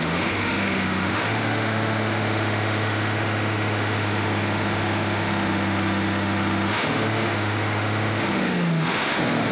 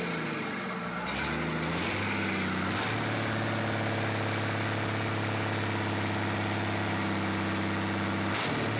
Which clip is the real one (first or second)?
second